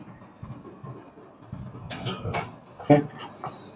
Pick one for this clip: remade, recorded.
recorded